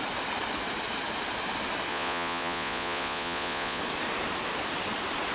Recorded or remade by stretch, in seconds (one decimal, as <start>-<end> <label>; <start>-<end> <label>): 0.0-1.9 recorded; 1.9-3.8 remade; 3.8-5.3 recorded